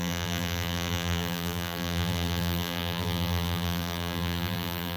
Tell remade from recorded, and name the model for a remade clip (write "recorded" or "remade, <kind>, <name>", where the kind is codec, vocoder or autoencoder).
remade, vocoder, BigVGAN v2